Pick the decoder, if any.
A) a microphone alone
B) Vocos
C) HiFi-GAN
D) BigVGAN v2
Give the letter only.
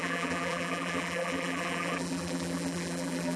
D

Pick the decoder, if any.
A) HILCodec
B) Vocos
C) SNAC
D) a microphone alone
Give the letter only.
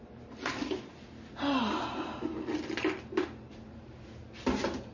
D